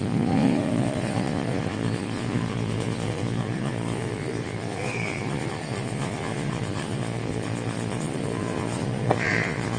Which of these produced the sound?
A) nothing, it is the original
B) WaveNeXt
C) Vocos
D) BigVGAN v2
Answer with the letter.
C